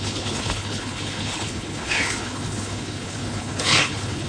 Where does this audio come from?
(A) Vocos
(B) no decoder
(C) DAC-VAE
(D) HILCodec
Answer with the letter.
D